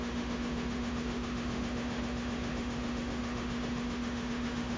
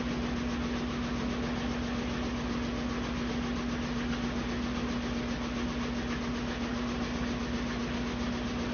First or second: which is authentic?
second